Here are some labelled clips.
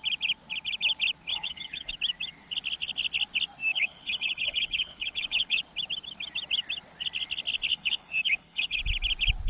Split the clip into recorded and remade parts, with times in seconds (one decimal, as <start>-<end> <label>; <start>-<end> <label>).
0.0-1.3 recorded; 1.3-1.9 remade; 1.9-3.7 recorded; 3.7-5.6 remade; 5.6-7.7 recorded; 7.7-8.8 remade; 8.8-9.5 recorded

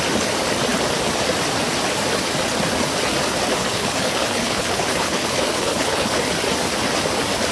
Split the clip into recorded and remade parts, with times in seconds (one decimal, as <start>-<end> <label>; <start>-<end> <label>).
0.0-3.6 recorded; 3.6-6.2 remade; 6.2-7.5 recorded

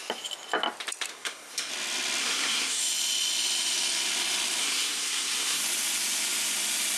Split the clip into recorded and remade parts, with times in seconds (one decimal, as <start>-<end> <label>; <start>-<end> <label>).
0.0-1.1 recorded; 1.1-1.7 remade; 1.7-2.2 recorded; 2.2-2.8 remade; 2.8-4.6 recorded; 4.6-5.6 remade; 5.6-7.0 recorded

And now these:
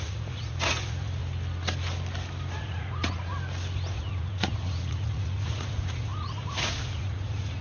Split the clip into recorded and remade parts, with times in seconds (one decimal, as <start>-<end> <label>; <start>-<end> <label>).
0.0-1.2 remade; 1.2-2.6 recorded; 2.6-3.3 remade; 3.3-3.9 recorded; 3.9-7.6 remade

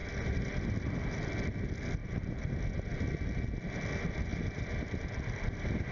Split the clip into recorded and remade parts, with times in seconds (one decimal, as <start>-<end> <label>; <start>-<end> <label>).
0.0-0.7 remade; 0.7-2.0 recorded; 2.0-2.5 remade; 2.5-4.3 recorded; 4.3-5.9 remade

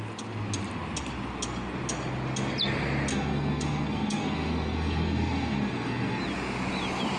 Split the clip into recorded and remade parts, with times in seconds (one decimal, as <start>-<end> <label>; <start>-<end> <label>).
0.0-3.1 recorded; 3.1-6.2 remade; 6.2-7.2 recorded

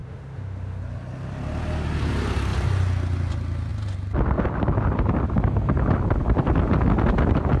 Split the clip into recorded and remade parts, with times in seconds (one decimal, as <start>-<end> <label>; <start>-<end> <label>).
0.0-0.8 remade; 0.8-7.6 recorded